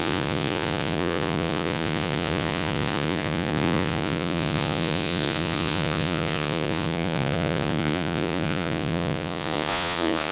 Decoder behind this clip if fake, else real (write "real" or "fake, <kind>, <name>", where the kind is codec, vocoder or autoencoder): fake, vocoder, Vocos